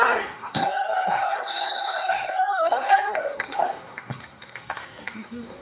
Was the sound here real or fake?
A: fake